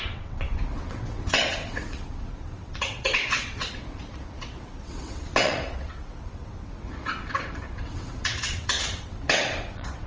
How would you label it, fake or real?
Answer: fake